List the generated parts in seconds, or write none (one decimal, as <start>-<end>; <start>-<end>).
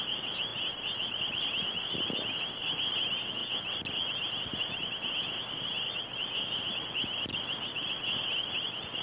none